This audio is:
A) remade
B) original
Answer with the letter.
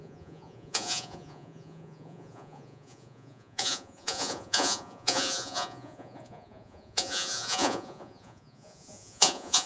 A